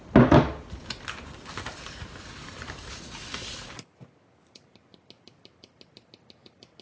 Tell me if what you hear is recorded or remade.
recorded